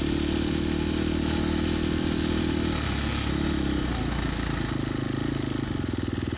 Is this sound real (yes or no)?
yes